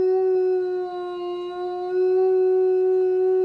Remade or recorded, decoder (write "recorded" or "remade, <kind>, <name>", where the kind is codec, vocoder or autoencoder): recorded